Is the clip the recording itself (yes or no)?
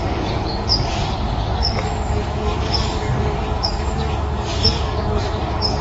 no